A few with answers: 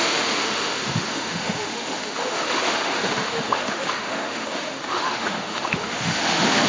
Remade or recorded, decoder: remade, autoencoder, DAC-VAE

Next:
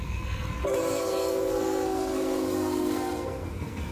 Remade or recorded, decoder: remade, codec, SNAC